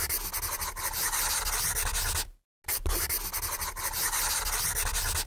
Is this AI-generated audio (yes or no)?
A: no